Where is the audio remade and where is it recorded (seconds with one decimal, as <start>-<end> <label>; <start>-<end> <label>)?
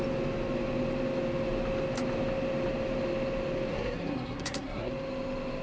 0.0-3.7 recorded; 3.7-4.9 remade; 4.9-5.6 recorded